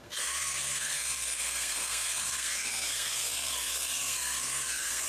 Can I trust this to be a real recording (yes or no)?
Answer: no